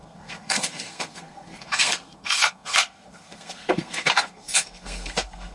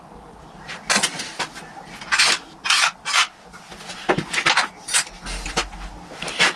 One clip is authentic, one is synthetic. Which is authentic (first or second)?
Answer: second